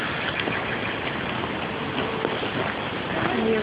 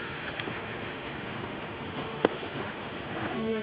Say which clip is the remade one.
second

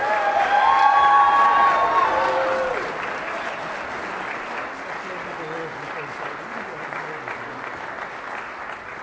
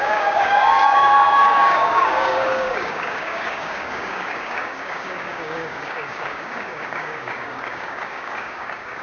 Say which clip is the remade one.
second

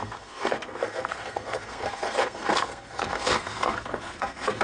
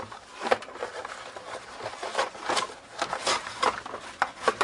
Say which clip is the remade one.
first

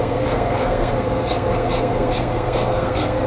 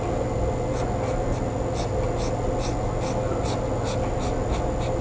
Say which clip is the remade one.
first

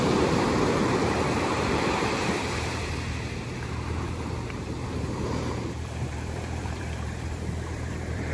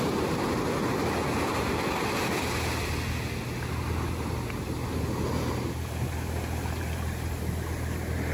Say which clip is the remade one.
first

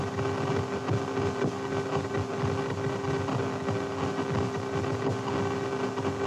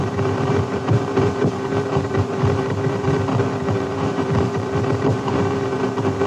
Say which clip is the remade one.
second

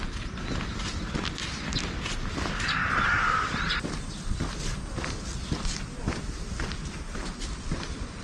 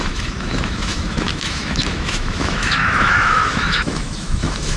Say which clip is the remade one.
second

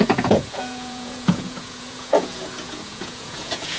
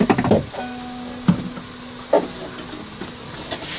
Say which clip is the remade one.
first